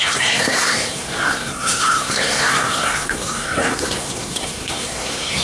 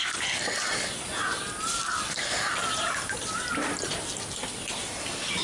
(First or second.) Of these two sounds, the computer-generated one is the first